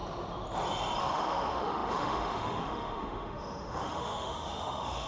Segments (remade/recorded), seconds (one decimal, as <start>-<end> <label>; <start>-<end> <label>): 0.0-1.0 recorded; 1.0-5.1 remade